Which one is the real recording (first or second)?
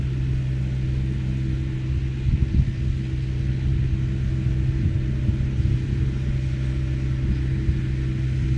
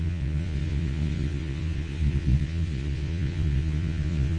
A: first